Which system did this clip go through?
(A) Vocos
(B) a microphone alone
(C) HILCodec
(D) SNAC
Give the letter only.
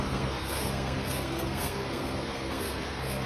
D